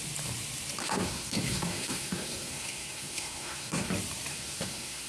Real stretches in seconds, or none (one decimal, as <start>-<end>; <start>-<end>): 0.0-0.8; 3.9-4.3